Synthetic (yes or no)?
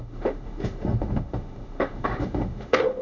yes